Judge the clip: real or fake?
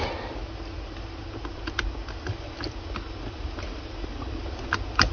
real